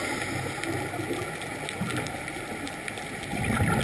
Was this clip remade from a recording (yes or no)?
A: no